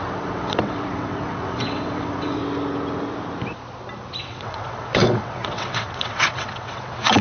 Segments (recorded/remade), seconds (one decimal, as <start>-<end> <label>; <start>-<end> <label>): 0.0-2.4 remade; 2.4-4.2 recorded; 4.2-7.2 remade